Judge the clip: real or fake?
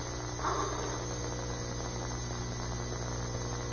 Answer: real